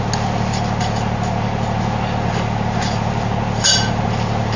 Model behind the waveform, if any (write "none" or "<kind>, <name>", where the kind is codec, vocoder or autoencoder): none